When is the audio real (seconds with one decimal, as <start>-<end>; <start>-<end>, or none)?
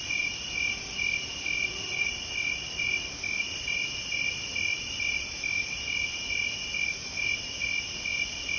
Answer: 0.0-1.7; 2.3-8.6